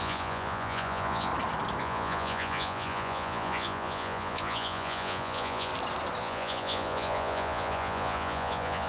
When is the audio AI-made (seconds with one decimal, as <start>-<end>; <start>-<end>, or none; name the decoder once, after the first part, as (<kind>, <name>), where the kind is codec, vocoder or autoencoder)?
0.0-1.3 (vocoder, Vocos); 1.8-5.7; 6.2-8.9